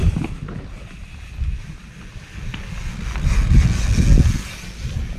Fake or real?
real